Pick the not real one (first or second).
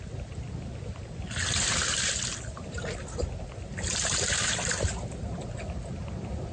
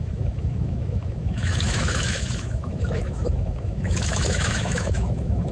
second